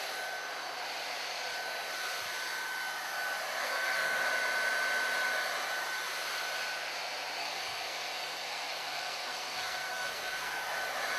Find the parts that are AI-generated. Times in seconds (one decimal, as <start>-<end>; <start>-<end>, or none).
3.6-4.3; 7.4-10.6